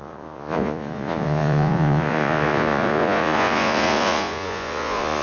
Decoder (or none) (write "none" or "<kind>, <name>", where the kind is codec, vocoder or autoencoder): vocoder, Vocos